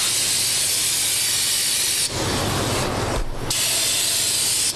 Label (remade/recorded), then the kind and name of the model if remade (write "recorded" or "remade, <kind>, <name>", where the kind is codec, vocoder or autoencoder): recorded